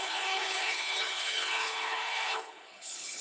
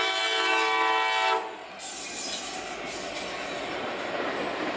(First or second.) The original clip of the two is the second